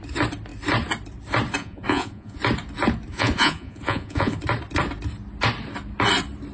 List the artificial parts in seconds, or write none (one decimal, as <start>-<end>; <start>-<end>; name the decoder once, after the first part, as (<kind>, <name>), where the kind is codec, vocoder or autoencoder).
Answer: 1.6-2.4 (vocoder, Vocos); 3.1-4.4